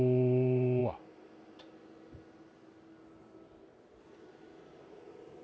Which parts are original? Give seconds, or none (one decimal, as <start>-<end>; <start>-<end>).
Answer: 0.8-4.0